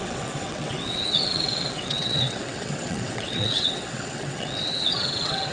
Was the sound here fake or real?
fake